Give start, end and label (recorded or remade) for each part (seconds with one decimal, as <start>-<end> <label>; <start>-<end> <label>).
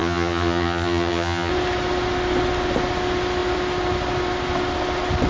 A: 0.0-1.5 remade; 1.5-5.3 recorded